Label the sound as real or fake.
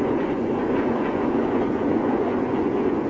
fake